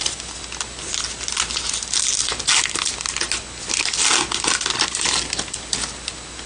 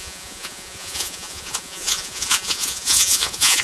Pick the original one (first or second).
first